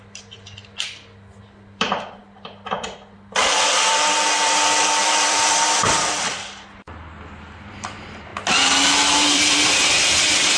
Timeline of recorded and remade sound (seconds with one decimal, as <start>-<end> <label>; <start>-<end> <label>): 0.0-0.6 remade; 0.6-1.4 recorded; 1.4-8.3 remade; 8.3-9.3 recorded; 9.3-10.6 remade